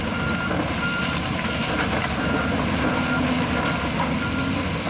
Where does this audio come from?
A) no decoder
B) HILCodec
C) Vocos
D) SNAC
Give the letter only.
A